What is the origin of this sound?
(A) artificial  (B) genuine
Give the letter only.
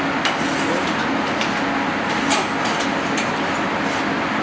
B